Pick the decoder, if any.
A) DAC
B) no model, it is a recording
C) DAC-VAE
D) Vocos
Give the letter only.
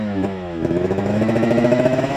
C